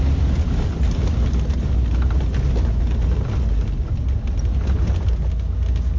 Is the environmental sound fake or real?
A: real